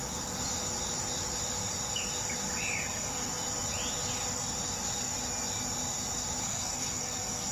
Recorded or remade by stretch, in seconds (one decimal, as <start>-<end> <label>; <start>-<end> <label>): 0.0-2.8 recorded; 2.8-3.3 remade; 3.3-6.4 recorded; 6.4-7.5 remade